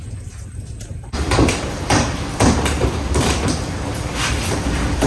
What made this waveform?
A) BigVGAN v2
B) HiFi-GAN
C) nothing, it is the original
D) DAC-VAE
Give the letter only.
A